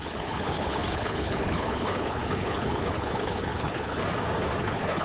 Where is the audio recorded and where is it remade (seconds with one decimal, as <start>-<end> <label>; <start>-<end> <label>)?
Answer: 0.0-4.0 remade; 4.0-4.6 recorded; 4.6-5.0 remade